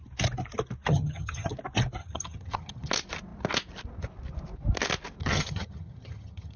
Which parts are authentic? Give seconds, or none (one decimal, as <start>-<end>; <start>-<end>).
0.0-0.9; 1.5-2.0; 2.9-5.2